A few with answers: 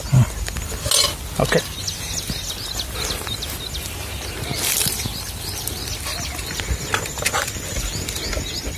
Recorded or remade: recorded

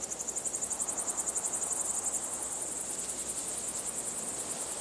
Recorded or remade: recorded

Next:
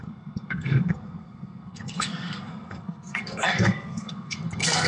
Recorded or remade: remade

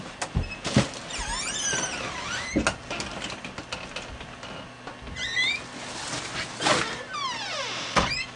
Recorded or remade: recorded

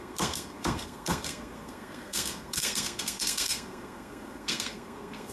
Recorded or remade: remade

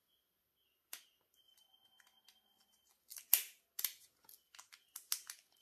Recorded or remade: recorded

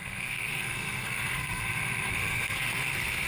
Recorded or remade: remade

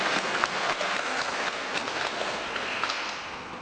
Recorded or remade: remade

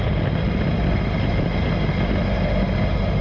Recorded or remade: recorded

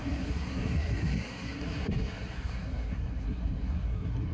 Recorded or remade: remade